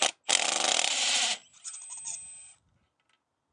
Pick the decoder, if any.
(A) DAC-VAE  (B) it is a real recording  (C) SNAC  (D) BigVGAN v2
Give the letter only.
B